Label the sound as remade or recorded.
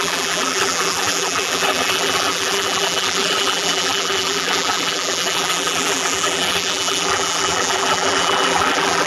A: remade